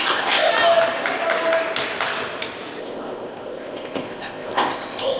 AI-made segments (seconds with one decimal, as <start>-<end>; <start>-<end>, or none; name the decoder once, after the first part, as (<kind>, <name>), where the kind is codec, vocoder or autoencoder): 0.0-0.5 (codec, ZipCodec); 2.8-5.2